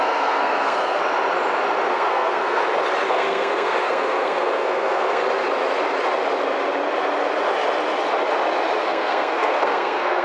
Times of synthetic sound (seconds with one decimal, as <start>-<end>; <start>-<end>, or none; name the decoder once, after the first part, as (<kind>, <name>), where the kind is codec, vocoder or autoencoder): 0.0-1.0 (codec, SNAC); 1.9-2.6; 3.1-5.2; 8.8-10.2